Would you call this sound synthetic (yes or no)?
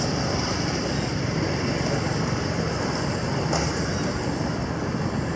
no